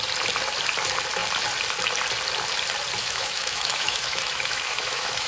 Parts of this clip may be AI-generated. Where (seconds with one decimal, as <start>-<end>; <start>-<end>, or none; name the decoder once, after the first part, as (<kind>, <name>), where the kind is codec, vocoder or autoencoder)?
3.0-5.3 (autoencoder, DAC-VAE)